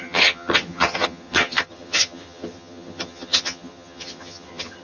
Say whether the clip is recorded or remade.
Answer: remade